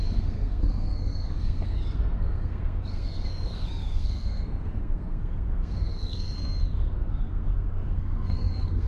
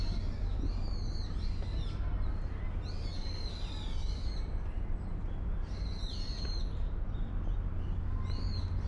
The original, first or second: second